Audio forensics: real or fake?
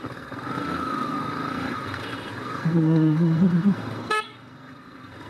fake